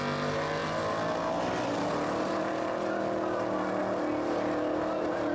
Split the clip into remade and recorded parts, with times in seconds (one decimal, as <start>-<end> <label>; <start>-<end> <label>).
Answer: 0.0-5.3 recorded